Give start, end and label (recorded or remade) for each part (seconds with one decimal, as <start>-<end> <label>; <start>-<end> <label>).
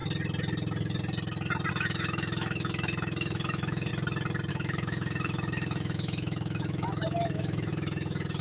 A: 0.0-1.7 recorded; 1.7-3.9 remade; 3.9-4.5 recorded; 4.5-8.4 remade